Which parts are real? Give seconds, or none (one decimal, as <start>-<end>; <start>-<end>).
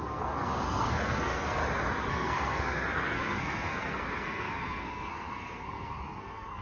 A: 1.6-2.1